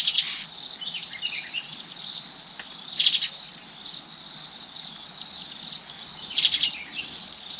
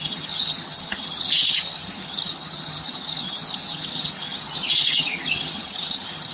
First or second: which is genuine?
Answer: first